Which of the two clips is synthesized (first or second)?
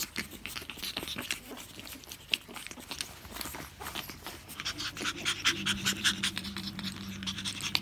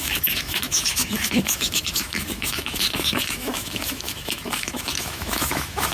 second